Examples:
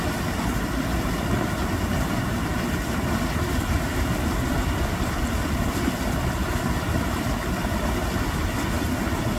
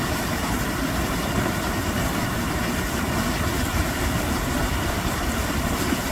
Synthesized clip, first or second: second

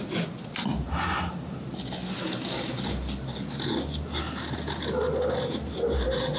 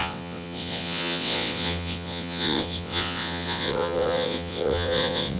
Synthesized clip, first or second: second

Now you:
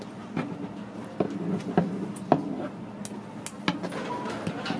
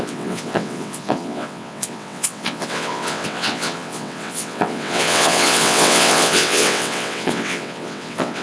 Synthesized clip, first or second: second